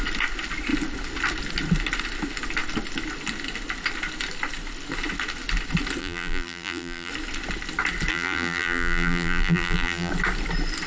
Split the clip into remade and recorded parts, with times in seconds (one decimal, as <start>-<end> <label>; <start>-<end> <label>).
0.0-6.0 recorded; 6.0-7.1 remade; 7.1-8.1 recorded; 8.1-10.1 remade; 10.1-10.9 recorded